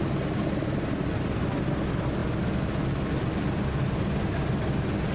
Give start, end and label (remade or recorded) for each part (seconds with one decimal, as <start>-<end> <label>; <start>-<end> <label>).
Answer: 0.0-5.1 recorded

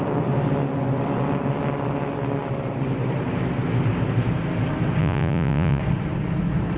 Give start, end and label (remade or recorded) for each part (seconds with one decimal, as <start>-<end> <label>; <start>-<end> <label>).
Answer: 0.0-5.0 recorded; 5.0-5.8 remade; 5.8-6.8 recorded